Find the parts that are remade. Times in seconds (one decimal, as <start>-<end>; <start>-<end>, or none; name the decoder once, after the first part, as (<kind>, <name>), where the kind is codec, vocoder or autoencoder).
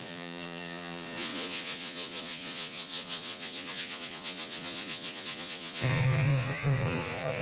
0.0-7.4 (vocoder, Vocos)